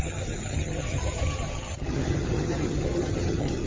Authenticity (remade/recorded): remade